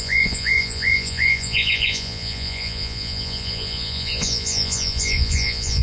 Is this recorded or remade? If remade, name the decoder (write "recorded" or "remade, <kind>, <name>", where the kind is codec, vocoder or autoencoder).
remade, vocoder, Vocos